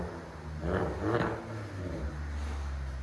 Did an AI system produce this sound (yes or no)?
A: no